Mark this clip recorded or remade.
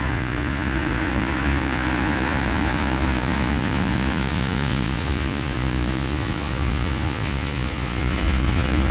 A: remade